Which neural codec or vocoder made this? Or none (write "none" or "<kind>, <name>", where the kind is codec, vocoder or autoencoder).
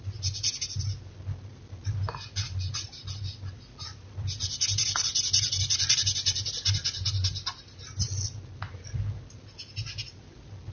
none